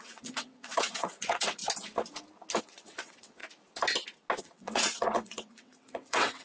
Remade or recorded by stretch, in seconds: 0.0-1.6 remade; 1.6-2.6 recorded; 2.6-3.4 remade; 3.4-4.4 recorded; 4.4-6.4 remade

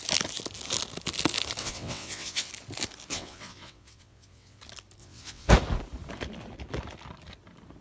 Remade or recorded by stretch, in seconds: 0.0-1.6 recorded; 1.6-2.5 remade; 2.5-3.1 recorded; 3.1-4.6 remade; 4.6-5.0 recorded; 5.0-5.5 remade; 5.5-7.8 recorded

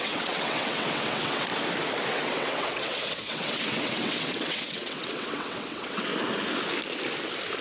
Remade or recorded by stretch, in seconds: 0.0-1.5 remade; 1.5-2.1 recorded; 2.1-6.1 remade; 6.1-7.6 recorded

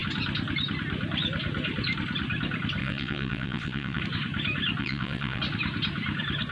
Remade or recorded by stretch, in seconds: 0.0-2.8 recorded; 2.8-4.0 remade; 4.0-4.8 recorded; 4.8-5.4 remade; 5.4-6.5 recorded

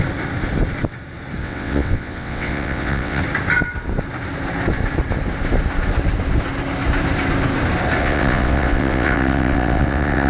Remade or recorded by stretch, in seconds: 0.0-1.4 recorded; 1.4-3.2 remade; 3.2-8.0 recorded; 8.0-10.3 remade